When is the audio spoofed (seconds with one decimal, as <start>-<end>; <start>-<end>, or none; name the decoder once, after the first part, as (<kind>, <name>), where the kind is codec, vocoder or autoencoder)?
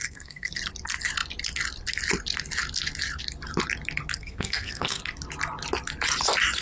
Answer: 0.0-0.5 (codec, SNAC); 4.2-5.0